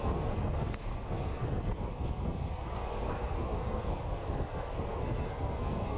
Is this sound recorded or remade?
remade